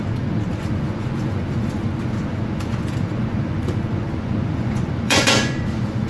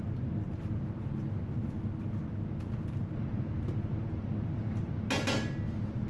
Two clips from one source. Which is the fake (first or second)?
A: first